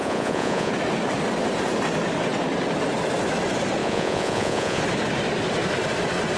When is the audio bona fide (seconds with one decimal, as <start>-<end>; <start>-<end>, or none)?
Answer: 0.7-3.8; 4.8-6.4